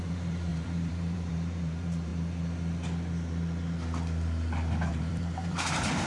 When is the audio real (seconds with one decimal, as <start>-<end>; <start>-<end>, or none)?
2.1-4.9